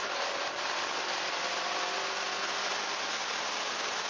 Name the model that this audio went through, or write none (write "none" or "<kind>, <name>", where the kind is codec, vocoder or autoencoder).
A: none